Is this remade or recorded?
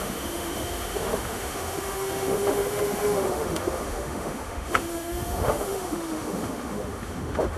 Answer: remade